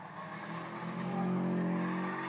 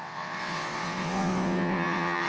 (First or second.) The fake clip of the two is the second